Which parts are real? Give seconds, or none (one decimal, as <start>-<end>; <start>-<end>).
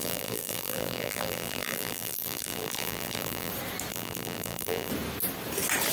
3.5-3.9; 4.9-5.9